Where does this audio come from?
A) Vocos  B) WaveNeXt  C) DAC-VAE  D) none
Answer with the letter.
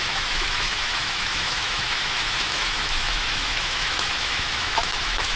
C